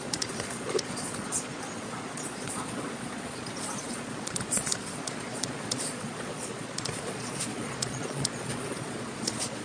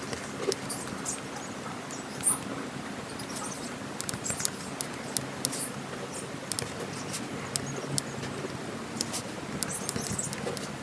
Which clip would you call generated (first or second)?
first